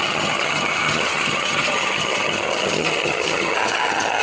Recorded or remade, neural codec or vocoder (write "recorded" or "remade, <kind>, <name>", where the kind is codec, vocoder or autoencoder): remade, vocoder, HiFi-GAN